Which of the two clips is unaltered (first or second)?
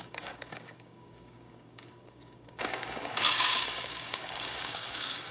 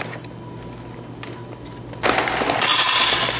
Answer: second